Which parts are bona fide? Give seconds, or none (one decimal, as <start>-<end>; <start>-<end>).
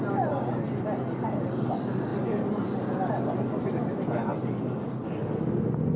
0.0-6.0